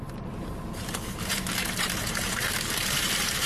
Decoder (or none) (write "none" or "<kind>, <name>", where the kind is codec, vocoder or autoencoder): vocoder, BigVGAN v2